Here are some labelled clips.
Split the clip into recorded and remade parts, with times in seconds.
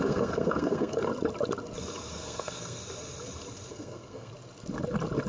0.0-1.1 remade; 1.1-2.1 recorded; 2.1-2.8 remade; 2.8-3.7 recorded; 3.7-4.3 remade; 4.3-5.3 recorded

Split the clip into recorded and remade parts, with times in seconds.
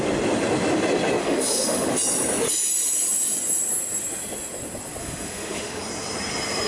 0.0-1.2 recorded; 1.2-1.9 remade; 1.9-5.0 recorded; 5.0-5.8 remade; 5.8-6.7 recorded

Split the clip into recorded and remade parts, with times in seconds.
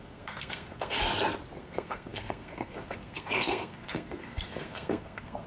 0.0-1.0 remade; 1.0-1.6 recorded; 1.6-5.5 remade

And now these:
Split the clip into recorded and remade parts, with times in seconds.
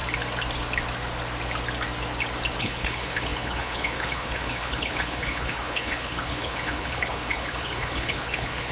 0.0-2.6 recorded; 2.6-8.7 remade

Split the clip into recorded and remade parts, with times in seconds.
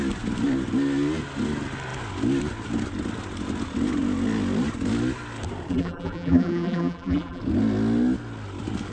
0.0-5.7 recorded; 5.7-7.4 remade; 7.4-8.9 recorded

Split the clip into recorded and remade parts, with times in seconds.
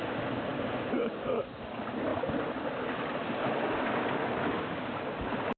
0.0-5.6 recorded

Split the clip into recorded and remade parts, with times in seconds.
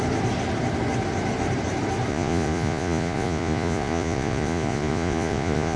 0.0-2.1 recorded; 2.1-5.8 remade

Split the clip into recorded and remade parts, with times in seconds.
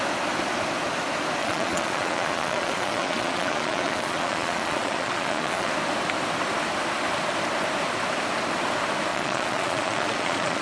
0.0-1.4 recorded; 1.4-5.7 remade; 5.7-9.1 recorded; 9.1-10.6 remade